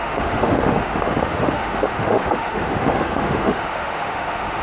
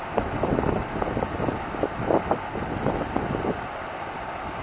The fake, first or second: first